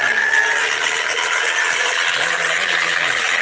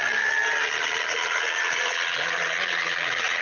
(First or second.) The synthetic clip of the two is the first